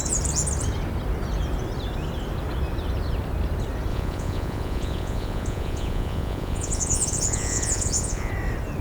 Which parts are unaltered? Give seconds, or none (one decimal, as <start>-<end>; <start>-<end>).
0.0-3.9; 8.3-8.8

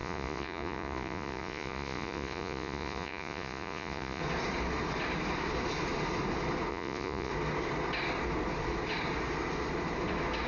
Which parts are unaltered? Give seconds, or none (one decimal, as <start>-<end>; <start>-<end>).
4.2-6.7; 7.3-10.5

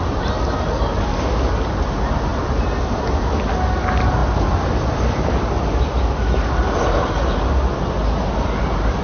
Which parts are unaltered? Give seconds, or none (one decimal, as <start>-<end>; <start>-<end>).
0.0-9.0

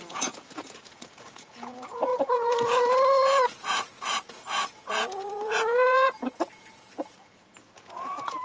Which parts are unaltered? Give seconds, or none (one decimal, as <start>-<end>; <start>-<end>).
none